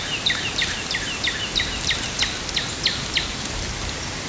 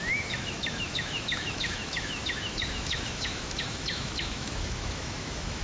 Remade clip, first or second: second